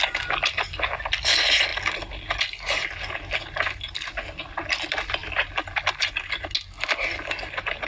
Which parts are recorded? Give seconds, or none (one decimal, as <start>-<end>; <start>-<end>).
0.0-7.9

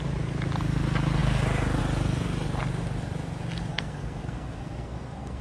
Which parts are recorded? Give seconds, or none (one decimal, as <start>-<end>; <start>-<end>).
0.0-3.7

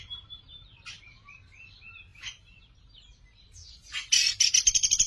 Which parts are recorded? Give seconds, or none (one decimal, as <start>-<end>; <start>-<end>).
none

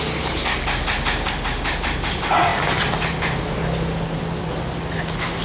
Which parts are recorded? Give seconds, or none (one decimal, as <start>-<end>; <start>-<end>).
0.0-5.4

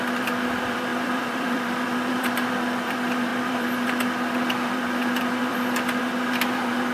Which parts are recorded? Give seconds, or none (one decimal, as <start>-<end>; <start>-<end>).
none